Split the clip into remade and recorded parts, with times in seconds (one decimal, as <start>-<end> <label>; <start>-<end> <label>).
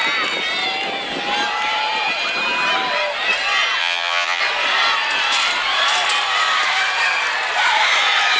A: 0.0-3.8 recorded; 3.8-4.4 remade; 4.4-8.4 recorded